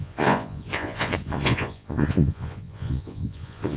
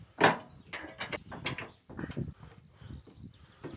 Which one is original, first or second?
second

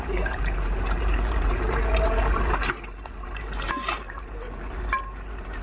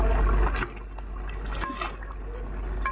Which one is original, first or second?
second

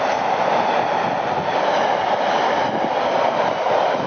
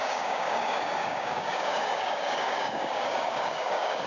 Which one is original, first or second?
first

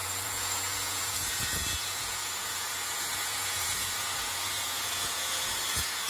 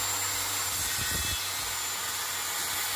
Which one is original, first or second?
second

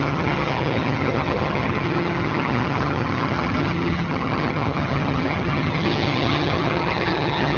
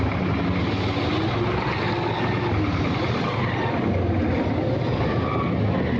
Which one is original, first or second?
second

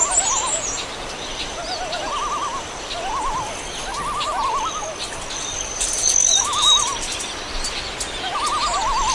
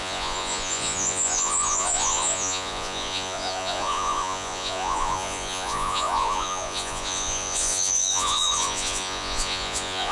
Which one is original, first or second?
first